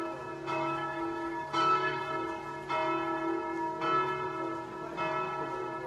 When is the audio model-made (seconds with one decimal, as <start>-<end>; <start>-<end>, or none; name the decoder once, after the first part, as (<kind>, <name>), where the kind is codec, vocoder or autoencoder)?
0.5-2.0 (autoencoder, DAC-VAE)